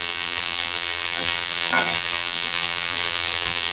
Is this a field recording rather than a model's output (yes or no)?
no